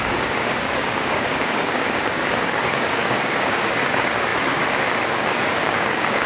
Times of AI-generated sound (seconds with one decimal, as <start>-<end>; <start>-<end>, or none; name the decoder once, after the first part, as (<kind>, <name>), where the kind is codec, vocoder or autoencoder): 0.0-6.3 (codec, DAC)